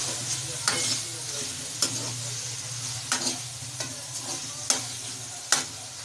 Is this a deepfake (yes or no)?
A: no